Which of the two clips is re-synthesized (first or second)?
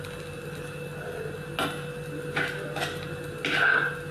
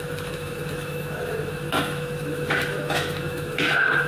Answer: second